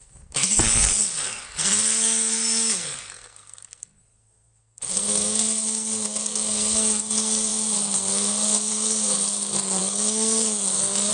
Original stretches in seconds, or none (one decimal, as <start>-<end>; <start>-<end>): none